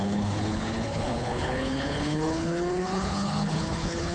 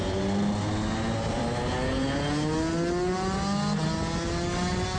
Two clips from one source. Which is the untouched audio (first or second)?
second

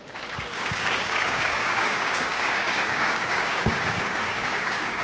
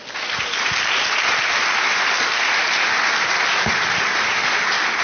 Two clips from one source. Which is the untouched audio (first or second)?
second